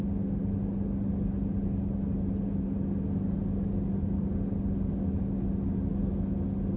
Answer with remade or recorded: recorded